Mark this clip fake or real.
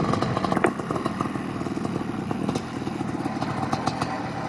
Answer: real